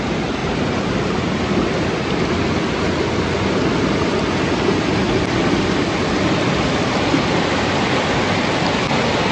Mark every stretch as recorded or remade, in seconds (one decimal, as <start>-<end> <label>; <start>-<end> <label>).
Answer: 0.0-9.3 recorded